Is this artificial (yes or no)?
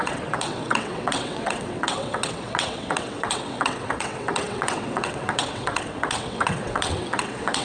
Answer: yes